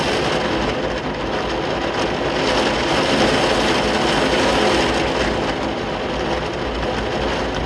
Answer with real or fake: real